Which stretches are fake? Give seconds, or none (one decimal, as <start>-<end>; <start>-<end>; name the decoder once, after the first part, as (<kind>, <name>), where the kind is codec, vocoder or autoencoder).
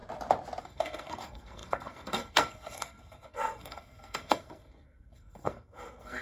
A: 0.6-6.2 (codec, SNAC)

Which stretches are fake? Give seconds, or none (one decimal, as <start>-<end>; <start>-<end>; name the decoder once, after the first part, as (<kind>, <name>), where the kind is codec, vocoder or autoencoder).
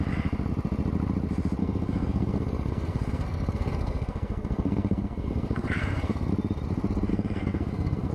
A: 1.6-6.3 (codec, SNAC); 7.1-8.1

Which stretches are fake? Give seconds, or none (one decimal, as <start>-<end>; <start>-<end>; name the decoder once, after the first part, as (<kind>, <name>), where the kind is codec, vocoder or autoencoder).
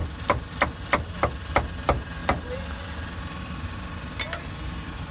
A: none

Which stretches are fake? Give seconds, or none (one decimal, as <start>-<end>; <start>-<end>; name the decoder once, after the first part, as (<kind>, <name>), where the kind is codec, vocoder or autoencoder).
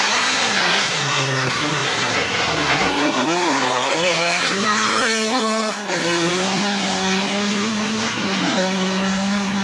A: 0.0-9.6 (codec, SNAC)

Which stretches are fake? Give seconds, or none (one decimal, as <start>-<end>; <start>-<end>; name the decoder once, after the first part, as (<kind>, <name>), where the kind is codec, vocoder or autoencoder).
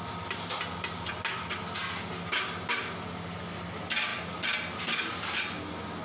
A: none